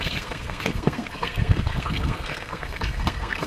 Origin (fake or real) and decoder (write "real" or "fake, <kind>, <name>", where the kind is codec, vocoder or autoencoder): fake, codec, SNAC